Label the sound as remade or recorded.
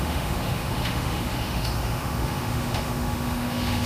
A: remade